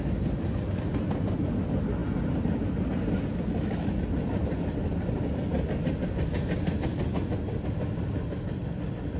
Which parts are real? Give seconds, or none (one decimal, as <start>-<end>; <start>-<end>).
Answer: 0.0-9.2